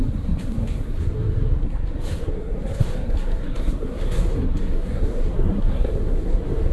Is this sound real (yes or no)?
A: no